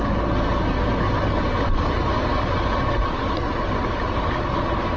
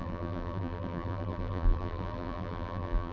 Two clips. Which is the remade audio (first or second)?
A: second